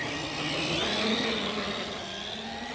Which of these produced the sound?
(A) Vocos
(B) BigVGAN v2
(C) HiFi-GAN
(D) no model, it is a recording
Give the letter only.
D